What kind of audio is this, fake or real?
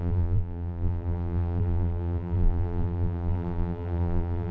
fake